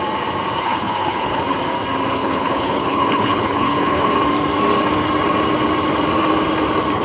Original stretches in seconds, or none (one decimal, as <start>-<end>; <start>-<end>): 0.0-0.6; 1.4-2.2; 4.1-7.0